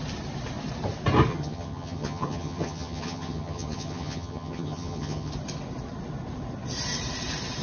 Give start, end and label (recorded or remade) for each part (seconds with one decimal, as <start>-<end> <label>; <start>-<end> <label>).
0.0-1.3 recorded; 1.3-5.3 remade; 5.3-7.6 recorded